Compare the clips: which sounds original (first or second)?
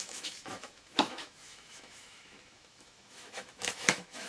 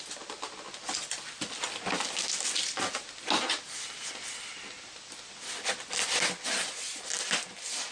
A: second